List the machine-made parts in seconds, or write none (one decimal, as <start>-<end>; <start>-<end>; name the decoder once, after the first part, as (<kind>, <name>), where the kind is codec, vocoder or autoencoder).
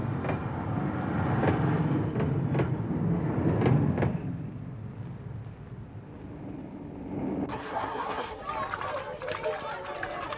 7.5-8.4 (codec, SNAC)